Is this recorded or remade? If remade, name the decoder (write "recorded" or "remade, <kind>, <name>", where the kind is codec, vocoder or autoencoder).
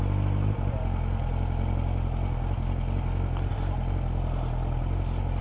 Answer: recorded